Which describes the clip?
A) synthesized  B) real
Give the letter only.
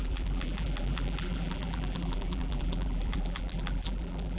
A